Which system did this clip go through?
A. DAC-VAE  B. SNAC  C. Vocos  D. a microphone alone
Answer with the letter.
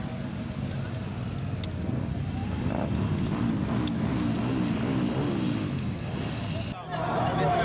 D